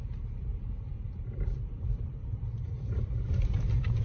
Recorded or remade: remade